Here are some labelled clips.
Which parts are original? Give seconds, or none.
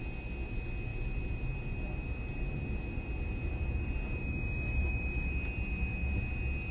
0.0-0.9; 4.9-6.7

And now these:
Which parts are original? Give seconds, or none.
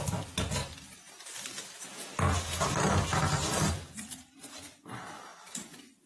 0.0-0.6; 3.2-5.3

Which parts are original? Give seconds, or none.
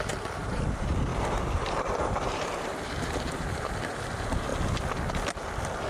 4.5-5.9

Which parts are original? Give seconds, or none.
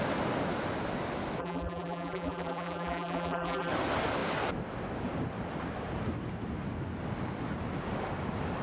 0.0-1.4; 3.7-8.6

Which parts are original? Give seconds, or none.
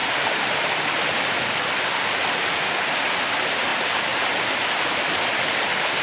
3.2-3.7; 4.3-6.0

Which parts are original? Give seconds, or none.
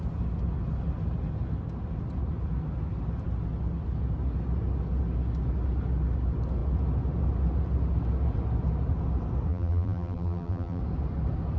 0.0-9.5; 10.8-11.6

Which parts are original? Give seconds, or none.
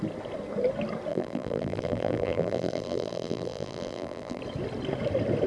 0.0-1.1; 4.4-5.5